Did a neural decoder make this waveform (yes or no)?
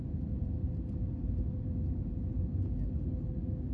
no